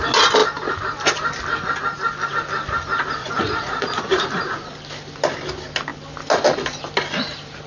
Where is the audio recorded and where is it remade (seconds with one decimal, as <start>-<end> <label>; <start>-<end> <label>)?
0.0-3.2 recorded; 3.2-4.1 remade; 4.1-7.7 recorded